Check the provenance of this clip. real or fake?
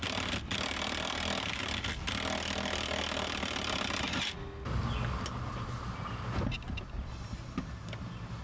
real